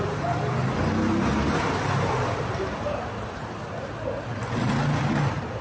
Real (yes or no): yes